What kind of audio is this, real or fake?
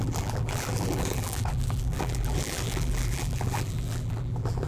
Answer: fake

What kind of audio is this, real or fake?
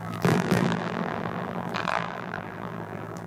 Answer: fake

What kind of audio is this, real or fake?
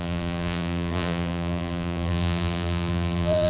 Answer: fake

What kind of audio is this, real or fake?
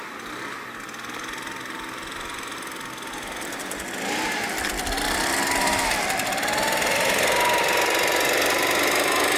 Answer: real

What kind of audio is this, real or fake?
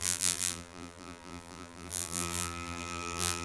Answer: fake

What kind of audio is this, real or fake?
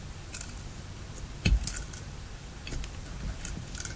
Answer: real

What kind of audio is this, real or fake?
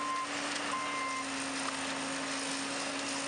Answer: real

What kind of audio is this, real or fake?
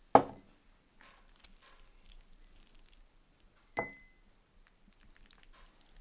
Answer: real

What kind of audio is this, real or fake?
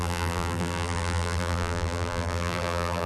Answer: fake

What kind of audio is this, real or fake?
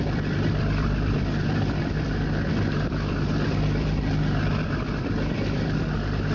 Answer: fake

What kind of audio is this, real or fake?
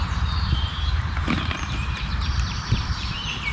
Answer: fake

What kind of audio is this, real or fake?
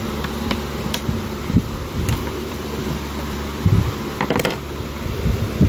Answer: fake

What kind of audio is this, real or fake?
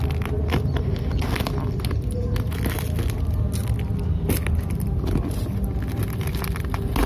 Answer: real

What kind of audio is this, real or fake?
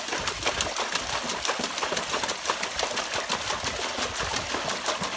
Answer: real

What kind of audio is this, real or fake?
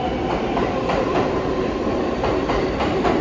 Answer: fake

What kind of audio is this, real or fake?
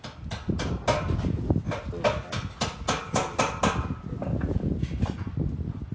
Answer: real